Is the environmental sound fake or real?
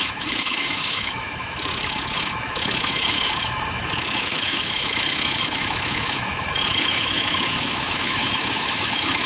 fake